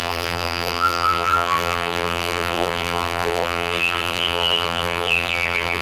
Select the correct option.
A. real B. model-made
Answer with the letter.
B